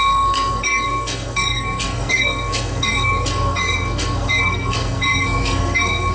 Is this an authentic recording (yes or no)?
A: no